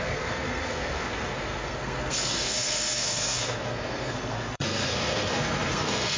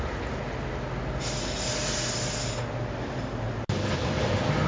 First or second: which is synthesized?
first